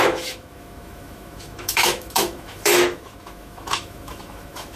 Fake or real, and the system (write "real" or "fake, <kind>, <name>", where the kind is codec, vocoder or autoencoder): fake, autoencoder, DAC-VAE